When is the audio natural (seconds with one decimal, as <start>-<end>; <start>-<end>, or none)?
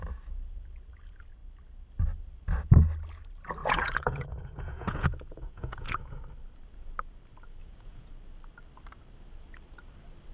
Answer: 0.0-3.6; 6.2-7.6; 8.1-10.3